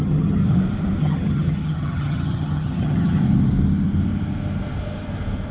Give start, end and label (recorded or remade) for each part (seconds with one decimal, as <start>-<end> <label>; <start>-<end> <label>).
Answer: 0.0-0.4 remade; 0.4-1.0 recorded; 1.0-3.2 remade; 3.2-5.5 recorded